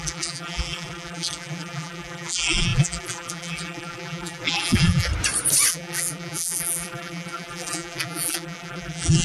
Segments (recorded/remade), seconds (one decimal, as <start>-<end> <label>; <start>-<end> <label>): 0.0-5.1 remade; 5.1-5.7 recorded; 5.7-9.2 remade